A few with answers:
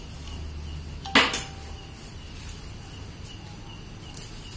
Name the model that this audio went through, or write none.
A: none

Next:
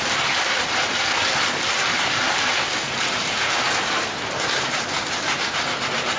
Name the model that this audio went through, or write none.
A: vocoder, BigVGAN v2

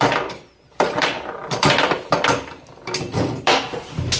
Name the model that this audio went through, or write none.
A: vocoder, BigVGAN v2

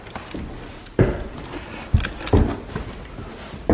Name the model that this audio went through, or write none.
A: none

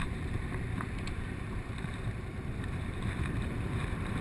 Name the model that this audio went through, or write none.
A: vocoder, BigVGAN v2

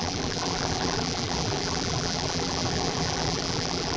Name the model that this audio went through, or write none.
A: vocoder, BigVGAN v2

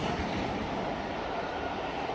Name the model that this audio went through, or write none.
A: vocoder, BigVGAN v2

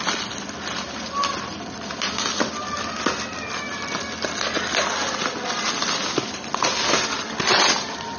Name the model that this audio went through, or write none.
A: none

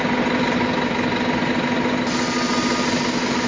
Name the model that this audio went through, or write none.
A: none